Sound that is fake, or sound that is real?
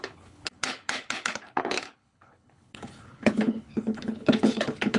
fake